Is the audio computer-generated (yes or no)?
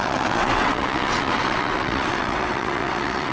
yes